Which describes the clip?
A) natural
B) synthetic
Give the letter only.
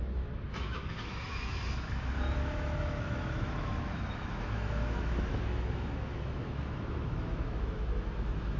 B